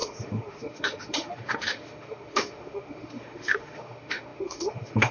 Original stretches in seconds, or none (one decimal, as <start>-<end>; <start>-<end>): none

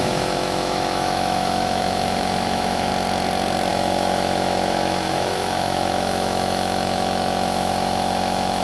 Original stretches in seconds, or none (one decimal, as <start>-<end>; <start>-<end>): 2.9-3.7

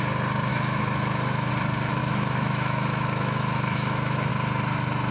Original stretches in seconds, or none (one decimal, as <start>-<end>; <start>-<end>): 0.0-0.5; 1.5-2.0; 4.3-5.1

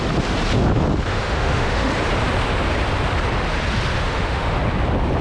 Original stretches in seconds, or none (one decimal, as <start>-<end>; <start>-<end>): 0.0-1.1; 1.9-3.9; 4.6-5.2